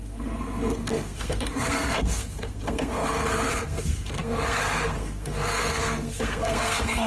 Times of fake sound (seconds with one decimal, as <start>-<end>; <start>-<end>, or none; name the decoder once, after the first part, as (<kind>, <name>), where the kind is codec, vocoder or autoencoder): 0.0-7.1 (codec, SNAC)